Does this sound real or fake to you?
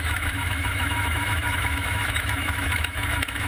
fake